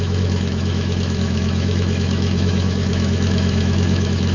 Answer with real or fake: fake